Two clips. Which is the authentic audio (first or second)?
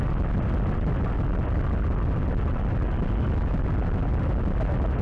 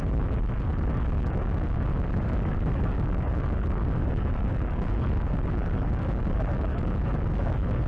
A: first